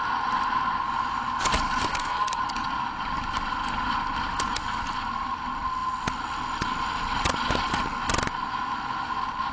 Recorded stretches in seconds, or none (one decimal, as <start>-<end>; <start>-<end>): 0.0-1.9; 2.4-9.5